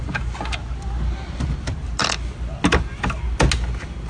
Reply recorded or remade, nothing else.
recorded